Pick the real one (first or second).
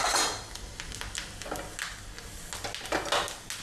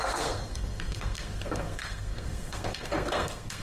first